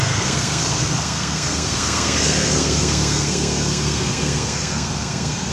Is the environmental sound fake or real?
fake